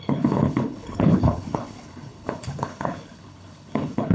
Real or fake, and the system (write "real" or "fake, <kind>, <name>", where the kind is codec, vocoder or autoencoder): fake, codec, HILCodec